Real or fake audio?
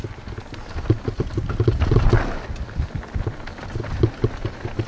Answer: real